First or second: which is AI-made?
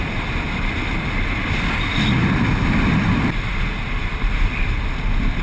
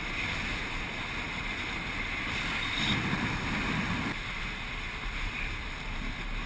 first